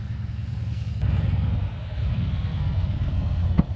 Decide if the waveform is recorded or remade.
remade